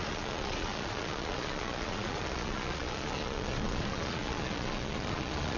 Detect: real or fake fake